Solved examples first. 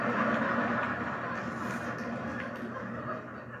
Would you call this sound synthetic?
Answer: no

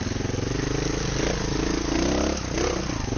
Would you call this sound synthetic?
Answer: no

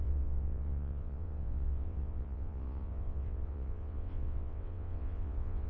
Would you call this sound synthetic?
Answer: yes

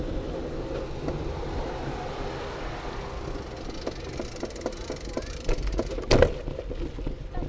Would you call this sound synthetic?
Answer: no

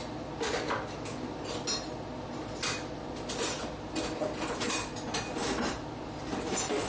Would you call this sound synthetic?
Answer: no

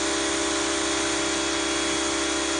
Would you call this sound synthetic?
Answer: no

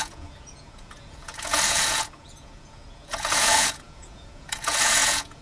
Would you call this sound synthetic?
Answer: yes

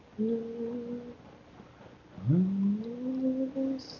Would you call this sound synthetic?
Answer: no